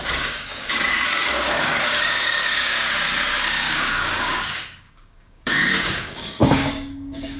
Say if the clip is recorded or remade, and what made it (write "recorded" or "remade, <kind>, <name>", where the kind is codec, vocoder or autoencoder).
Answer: remade, codec, DAC